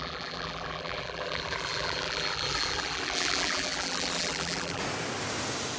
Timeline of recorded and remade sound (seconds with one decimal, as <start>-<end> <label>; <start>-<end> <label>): 0.0-4.8 remade; 4.8-5.8 recorded